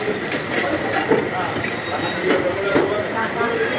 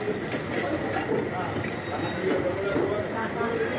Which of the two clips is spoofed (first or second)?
first